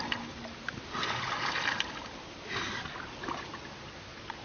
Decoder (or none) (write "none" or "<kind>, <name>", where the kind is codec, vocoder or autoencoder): none